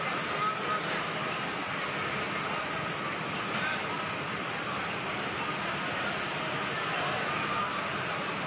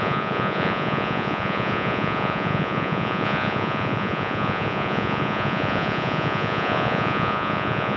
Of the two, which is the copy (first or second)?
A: second